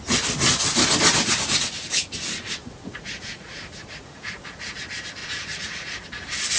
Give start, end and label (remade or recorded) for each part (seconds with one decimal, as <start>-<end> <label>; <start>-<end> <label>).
0.0-2.6 recorded; 2.6-4.8 remade; 4.8-5.2 recorded; 5.2-6.1 remade; 6.1-6.6 recorded